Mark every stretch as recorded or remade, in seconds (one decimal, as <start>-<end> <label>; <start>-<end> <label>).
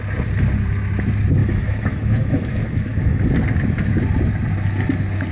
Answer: 0.0-1.4 recorded; 1.4-3.2 remade; 3.2-5.3 recorded